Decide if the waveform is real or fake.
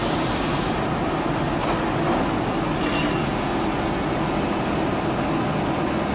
real